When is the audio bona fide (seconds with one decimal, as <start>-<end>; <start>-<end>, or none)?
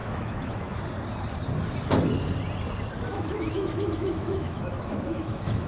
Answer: 0.8-3.1